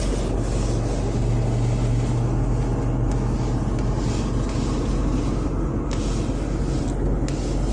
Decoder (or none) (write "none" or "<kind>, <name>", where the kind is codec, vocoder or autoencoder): none